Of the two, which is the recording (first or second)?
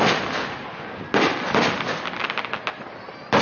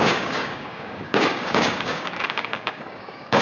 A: first